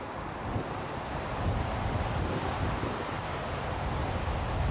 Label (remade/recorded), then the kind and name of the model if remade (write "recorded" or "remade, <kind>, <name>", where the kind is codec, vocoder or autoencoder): recorded